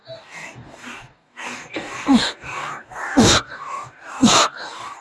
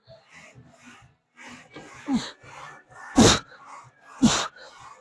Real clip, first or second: second